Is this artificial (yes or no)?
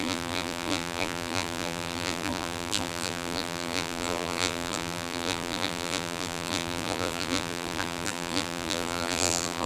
yes